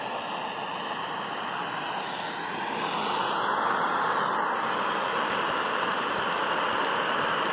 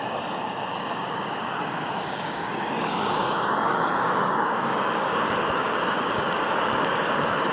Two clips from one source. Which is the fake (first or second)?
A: second